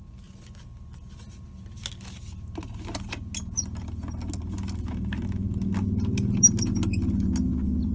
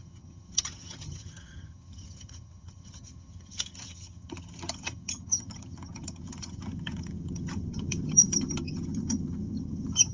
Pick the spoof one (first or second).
second